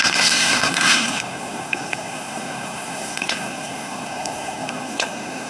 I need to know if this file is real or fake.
fake